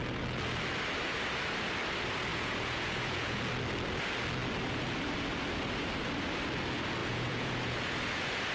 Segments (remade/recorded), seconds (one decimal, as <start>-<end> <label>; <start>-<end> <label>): 0.0-2.3 recorded; 2.3-3.4 remade; 3.4-7.0 recorded; 7.0-8.5 remade